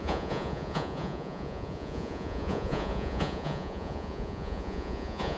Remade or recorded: remade